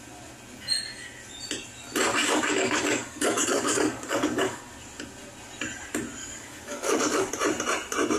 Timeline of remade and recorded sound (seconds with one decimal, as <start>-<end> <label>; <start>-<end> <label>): 0.0-2.1 recorded; 2.1-4.6 remade; 4.6-6.2 recorded; 6.2-7.3 remade; 7.3-8.2 recorded